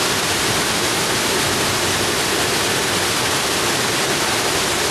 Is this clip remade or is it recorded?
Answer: recorded